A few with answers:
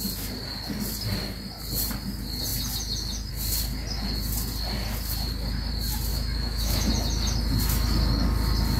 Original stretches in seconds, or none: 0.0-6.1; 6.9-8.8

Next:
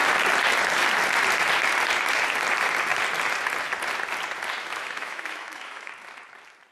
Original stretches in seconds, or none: 0.0-4.6; 5.9-6.7